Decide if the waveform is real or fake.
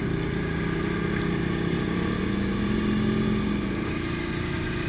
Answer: real